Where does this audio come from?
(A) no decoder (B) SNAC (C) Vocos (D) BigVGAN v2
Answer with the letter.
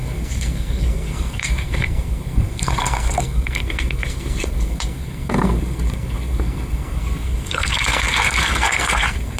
B